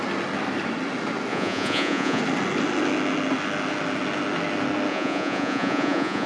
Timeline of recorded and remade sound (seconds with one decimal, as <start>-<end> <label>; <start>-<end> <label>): 0.0-1.3 recorded; 1.3-2.2 remade; 2.2-4.9 recorded; 4.9-6.3 remade